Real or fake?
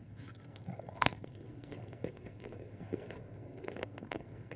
fake